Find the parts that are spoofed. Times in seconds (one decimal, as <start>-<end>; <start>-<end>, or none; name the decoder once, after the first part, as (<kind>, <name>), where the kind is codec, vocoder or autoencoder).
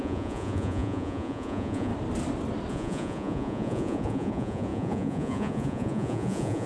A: 0.0-1.9 (vocoder, Vocos); 2.7-6.7